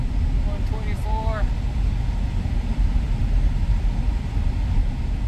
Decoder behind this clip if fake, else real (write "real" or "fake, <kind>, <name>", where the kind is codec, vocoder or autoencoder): real